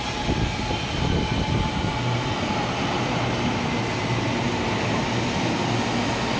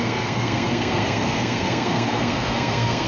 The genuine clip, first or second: first